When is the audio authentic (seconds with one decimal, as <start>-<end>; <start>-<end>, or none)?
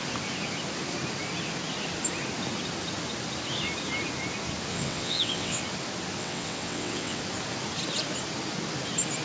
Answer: 0.0-4.7; 5.6-6.2; 7.2-9.2